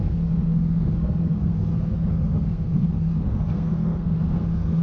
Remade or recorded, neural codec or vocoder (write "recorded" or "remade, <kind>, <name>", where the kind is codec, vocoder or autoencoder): remade, codec, SNAC